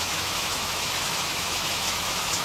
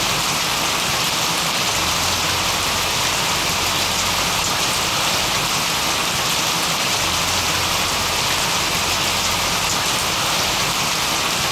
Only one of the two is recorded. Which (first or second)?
second